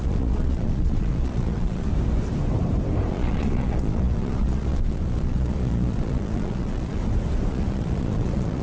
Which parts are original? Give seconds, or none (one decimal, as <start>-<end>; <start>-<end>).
1.9-3.1; 7.0-7.5